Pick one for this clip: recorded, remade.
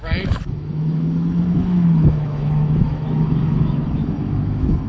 remade